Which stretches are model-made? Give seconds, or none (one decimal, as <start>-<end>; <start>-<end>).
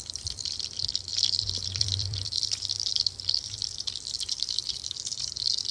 0.0-5.7